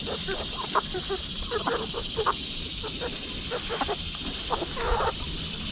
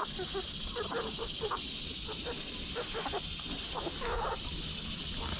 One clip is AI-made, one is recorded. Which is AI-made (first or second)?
first